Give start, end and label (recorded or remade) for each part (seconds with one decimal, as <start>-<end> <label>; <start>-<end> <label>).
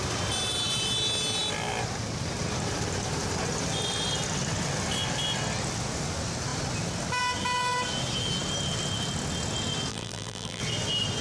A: 0.0-9.9 recorded; 9.9-10.6 remade; 10.6-11.2 recorded